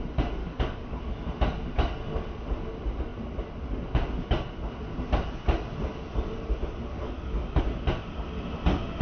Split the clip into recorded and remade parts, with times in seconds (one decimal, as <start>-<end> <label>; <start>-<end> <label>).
0.0-0.4 recorded; 0.4-1.0 remade; 1.0-6.9 recorded; 6.9-7.6 remade; 7.6-9.0 recorded